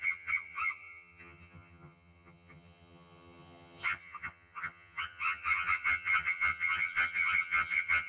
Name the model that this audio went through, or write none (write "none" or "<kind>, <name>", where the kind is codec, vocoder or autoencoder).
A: vocoder, HiFi-GAN